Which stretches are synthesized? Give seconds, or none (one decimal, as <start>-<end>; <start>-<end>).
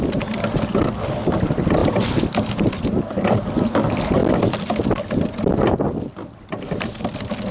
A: 1.8-3.4